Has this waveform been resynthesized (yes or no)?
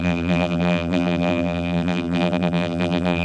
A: yes